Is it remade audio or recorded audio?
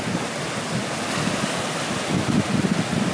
recorded